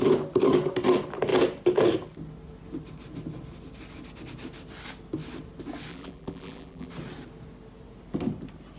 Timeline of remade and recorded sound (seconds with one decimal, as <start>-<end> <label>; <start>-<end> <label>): 0.0-5.9 recorded; 5.9-6.9 remade; 6.9-8.8 recorded